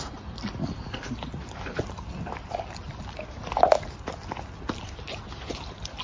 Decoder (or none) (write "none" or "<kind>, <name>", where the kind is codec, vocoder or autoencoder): none